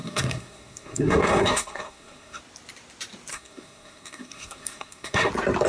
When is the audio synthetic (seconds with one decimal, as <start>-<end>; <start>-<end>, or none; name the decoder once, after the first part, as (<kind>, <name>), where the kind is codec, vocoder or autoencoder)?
0.0-2.4 (codec, SNAC); 3.3-5.3